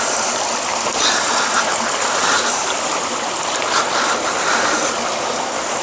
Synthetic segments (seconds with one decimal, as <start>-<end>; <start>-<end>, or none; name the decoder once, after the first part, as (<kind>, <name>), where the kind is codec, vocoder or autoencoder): none